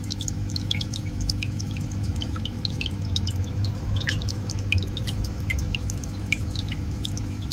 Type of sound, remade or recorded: remade